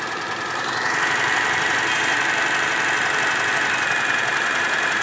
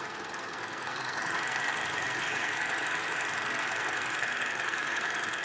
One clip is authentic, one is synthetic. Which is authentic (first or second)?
first